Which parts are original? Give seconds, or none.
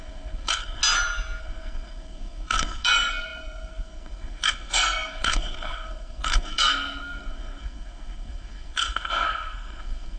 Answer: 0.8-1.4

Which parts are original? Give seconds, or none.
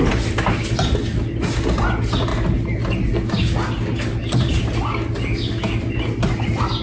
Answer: 0.0-6.8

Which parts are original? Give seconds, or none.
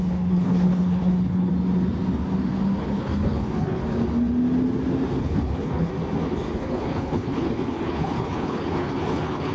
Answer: 1.5-2.8; 3.8-5.2; 5.9-6.5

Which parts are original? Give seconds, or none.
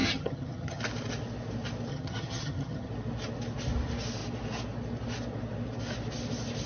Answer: 0.8-1.9; 2.9-6.7